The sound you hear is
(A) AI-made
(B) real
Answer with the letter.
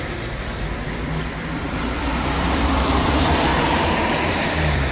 A